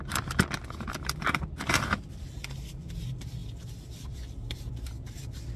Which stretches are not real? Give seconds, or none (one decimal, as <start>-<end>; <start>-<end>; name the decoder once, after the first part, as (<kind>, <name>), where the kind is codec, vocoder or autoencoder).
3.4-4.6 (vocoder, BigVGAN v2)